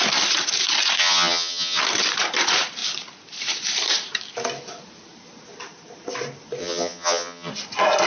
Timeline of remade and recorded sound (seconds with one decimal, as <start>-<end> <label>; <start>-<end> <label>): 0.0-1.0 recorded; 1.0-1.8 remade; 1.8-6.6 recorded; 6.6-7.5 remade; 7.5-8.1 recorded